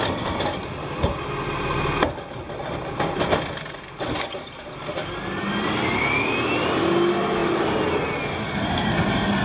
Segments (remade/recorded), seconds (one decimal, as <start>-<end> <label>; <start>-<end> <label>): 0.0-0.5 recorded; 0.5-1.1 remade; 1.1-9.4 recorded